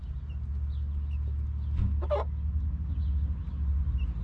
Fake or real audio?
real